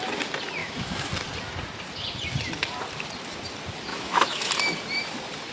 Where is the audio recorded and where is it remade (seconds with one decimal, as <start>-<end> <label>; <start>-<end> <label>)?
0.0-0.6 recorded; 0.6-1.1 remade; 1.1-3.9 recorded; 3.9-4.5 remade; 4.5-5.5 recorded